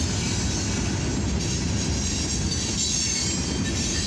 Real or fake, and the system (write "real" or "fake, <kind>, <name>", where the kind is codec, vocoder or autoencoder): real